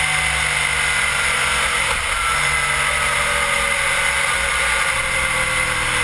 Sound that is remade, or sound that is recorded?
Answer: recorded